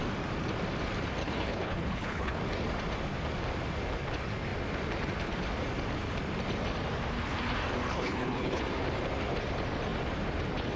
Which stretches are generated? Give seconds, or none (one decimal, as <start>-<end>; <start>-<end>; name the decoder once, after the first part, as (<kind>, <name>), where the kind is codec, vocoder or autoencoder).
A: 1.2-2.4 (codec, HILCodec); 7.9-8.6